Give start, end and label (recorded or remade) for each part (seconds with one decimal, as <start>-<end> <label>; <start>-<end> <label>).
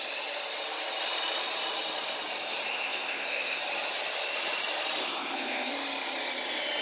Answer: 0.0-2.7 recorded; 2.7-3.6 remade; 3.6-5.0 recorded; 5.0-5.7 remade; 5.7-6.8 recorded